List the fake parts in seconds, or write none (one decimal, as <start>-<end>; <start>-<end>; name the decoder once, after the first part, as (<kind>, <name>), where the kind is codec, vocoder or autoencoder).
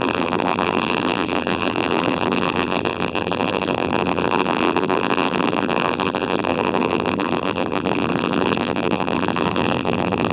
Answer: 0.0-10.3 (vocoder, BigVGAN v2)